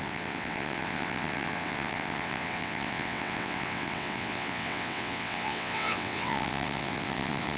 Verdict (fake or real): fake